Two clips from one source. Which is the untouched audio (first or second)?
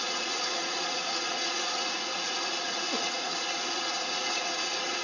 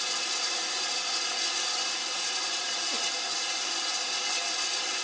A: second